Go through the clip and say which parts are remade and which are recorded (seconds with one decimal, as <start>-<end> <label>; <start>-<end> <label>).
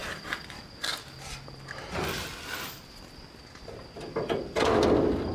0.0-5.3 recorded